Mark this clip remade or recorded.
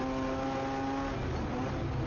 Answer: recorded